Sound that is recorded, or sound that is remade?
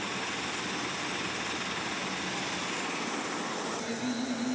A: recorded